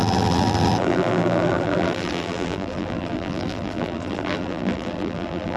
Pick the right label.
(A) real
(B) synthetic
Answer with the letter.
B